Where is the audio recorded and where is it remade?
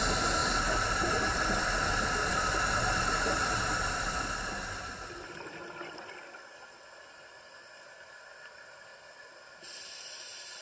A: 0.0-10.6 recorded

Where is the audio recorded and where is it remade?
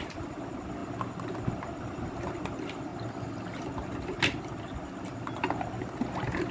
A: 0.0-6.5 recorded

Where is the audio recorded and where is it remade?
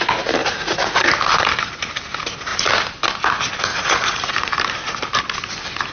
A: 0.0-0.4 recorded; 0.4-1.1 remade; 1.1-3.7 recorded; 3.7-4.5 remade; 4.5-5.9 recorded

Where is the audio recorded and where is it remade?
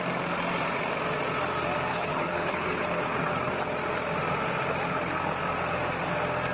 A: 0.0-1.9 recorded; 1.9-3.5 remade; 3.5-6.5 recorded